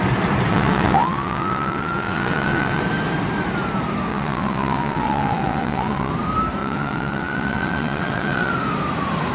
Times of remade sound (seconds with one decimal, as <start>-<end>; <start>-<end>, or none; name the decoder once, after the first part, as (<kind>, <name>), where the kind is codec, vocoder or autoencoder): 0.5-2.8 (vocoder, WaveNeXt); 4.1-6.1; 6.6-8.5